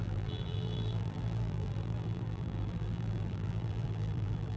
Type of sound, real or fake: fake